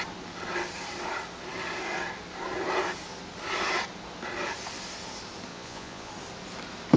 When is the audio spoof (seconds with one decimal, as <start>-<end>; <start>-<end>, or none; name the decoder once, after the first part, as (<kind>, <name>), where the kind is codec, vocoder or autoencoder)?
5.5-6.1 (vocoder, Vocos)